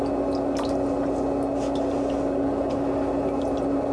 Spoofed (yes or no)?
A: no